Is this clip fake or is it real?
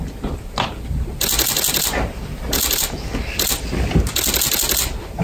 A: real